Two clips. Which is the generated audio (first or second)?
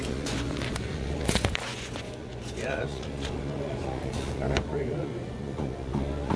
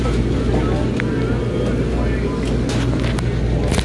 first